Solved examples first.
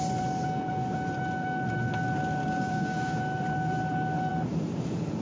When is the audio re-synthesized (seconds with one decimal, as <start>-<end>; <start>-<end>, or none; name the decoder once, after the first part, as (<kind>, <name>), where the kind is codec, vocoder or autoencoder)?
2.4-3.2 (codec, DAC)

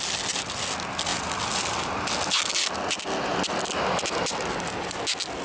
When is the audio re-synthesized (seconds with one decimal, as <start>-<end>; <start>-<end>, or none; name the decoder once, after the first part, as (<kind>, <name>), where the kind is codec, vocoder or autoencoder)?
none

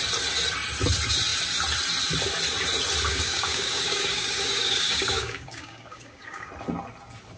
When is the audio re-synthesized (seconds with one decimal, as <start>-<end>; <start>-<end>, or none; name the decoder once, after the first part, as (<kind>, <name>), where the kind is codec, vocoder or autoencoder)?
3.1-6.5 (codec, DAC)